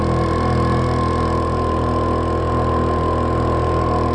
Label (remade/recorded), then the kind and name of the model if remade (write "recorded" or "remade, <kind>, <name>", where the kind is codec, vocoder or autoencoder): recorded